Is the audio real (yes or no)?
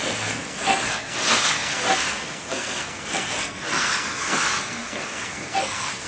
no